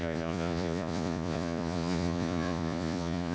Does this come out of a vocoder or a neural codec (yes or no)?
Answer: yes